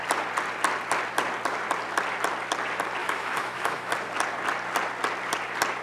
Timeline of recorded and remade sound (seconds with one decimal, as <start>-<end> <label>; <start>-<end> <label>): 0.0-3.0 recorded; 3.0-3.9 remade; 3.9-5.8 recorded